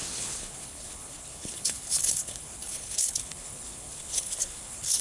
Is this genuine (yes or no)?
no